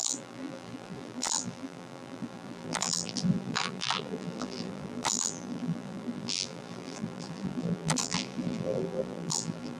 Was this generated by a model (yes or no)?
yes